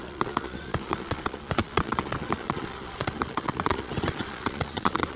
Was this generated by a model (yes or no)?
yes